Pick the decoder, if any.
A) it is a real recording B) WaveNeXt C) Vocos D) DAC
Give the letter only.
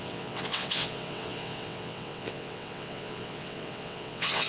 B